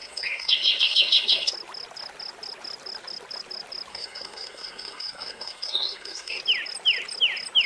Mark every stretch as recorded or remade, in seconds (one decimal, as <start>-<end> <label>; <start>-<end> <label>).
0.0-1.5 remade; 1.5-3.9 recorded; 3.9-6.4 remade; 6.4-7.7 recorded